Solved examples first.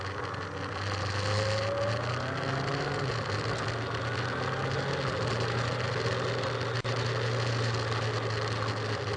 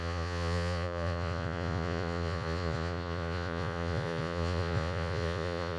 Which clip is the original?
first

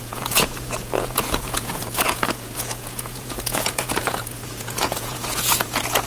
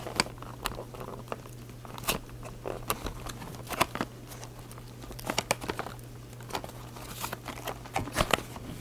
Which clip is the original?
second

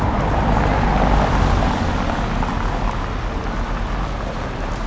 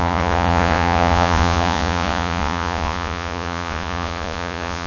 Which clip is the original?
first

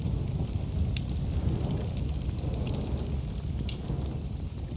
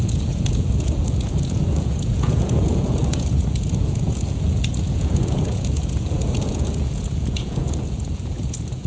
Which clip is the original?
first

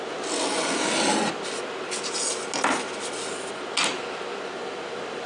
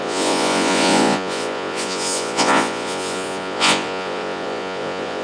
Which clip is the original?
first